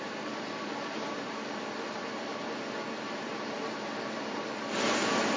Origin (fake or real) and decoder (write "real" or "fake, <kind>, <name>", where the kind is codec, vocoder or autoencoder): fake, vocoder, BigVGAN v2